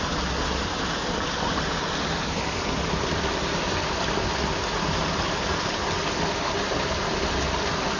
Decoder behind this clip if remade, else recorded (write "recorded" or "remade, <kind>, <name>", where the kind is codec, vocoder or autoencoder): recorded